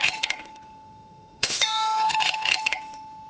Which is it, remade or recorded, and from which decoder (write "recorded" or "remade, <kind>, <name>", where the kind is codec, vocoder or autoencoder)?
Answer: remade, autoencoder, DAC-VAE